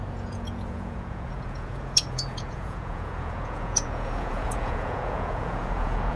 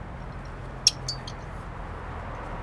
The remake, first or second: first